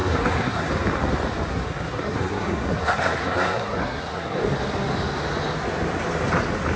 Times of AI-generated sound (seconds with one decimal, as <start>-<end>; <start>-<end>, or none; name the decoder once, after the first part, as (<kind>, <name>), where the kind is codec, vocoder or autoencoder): 0.0-0.7 (codec, SNAC); 1.5-4.4